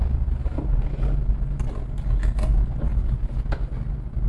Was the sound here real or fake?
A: real